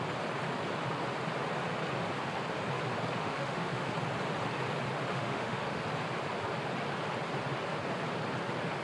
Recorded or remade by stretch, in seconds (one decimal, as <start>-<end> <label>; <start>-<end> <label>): 0.0-3.2 recorded; 3.2-3.9 remade; 3.9-5.1 recorded; 5.1-5.8 remade; 5.8-8.8 recorded